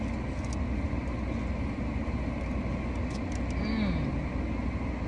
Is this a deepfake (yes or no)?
no